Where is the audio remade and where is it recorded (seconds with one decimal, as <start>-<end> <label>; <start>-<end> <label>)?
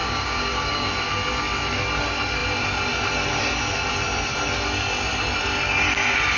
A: 0.0-0.9 remade; 0.9-6.4 recorded